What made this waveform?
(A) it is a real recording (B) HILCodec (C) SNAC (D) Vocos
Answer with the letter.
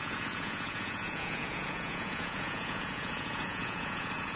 D